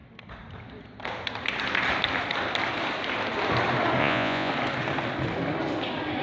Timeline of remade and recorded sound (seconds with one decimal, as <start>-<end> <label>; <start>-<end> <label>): 0.0-4.0 recorded; 4.0-4.5 remade; 4.5-6.2 recorded